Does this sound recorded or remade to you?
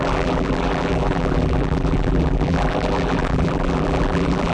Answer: remade